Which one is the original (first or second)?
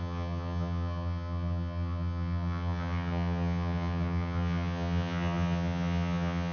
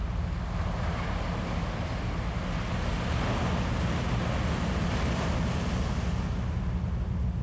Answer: second